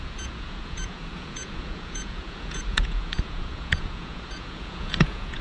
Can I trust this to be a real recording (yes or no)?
no